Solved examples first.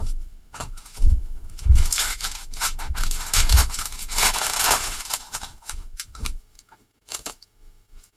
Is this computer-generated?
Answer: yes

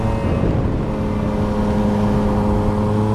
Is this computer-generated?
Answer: no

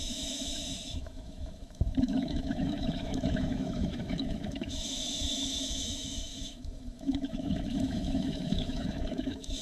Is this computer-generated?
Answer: yes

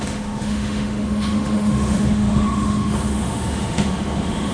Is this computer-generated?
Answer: yes